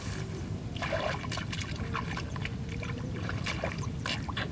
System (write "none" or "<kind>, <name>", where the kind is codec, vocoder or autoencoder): none